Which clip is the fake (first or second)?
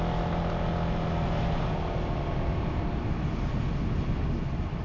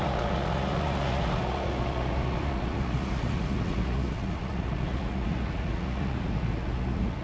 second